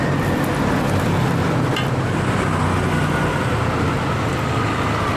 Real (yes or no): yes